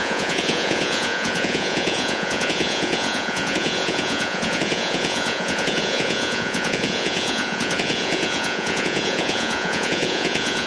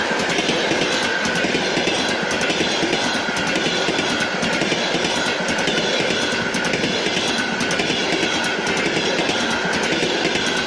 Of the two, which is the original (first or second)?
second